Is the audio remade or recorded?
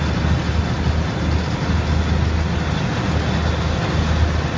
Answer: recorded